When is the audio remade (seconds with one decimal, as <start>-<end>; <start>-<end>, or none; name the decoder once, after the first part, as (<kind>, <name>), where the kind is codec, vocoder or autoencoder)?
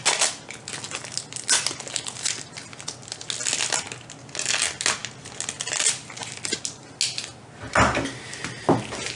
none